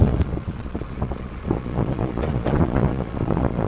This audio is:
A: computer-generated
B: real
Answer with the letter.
A